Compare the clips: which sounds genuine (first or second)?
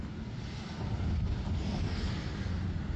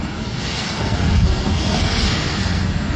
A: first